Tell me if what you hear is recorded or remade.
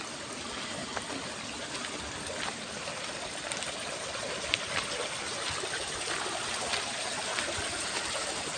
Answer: recorded